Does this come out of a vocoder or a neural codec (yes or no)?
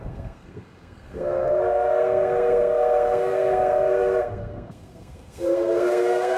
yes